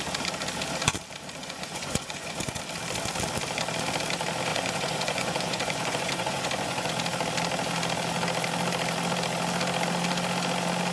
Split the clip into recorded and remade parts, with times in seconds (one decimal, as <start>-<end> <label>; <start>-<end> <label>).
0.0-1.4 recorded; 1.4-2.6 remade; 2.6-4.5 recorded; 4.5-6.9 remade; 6.9-10.9 recorded